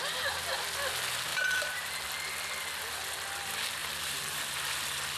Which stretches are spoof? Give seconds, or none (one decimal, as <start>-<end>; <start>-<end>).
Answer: 1.3-1.9; 3.8-4.5